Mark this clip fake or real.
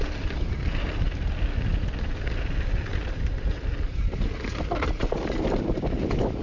real